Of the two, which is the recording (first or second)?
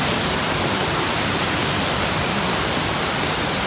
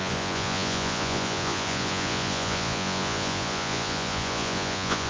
first